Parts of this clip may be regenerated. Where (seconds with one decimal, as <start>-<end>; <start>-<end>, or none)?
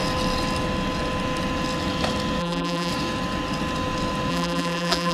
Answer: 2.4-2.9; 4.3-5.1